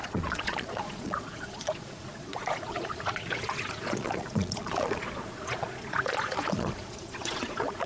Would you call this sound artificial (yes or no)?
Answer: yes